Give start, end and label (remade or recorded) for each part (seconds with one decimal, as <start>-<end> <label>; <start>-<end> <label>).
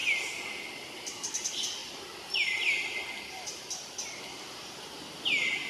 0.0-5.7 recorded